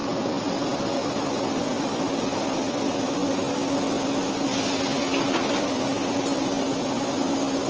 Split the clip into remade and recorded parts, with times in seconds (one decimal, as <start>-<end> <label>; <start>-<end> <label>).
0.0-7.7 recorded